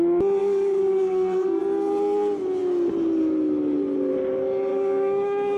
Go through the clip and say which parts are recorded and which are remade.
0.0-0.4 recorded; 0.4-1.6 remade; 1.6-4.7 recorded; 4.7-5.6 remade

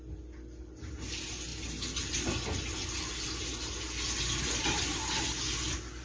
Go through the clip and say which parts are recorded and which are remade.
0.0-6.0 recorded

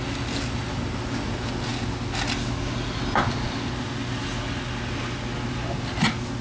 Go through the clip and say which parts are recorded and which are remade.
0.0-6.4 recorded

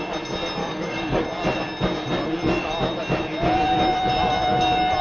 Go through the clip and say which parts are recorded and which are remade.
0.0-0.6 recorded; 0.6-1.2 remade; 1.2-5.0 recorded

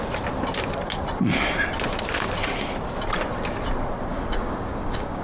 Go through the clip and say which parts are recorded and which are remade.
0.0-4.1 recorded; 4.1-5.2 remade

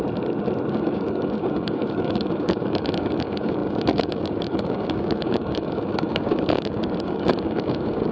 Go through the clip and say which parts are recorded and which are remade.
0.0-0.7 recorded; 0.7-8.1 remade